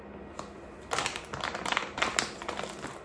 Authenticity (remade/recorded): recorded